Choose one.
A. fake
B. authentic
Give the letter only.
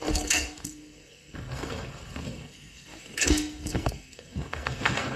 A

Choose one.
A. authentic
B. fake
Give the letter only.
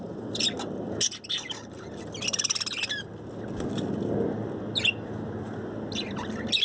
A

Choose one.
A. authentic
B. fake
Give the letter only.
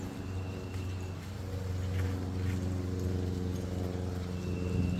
A